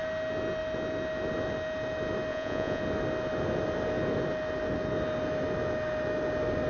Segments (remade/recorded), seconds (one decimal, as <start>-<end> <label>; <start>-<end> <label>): 0.0-2.3 recorded; 2.3-2.8 remade; 2.8-6.7 recorded